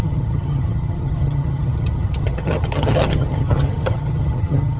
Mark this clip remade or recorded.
remade